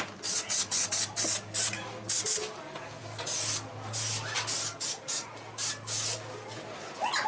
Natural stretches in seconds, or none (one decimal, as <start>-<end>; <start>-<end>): 0.0-7.3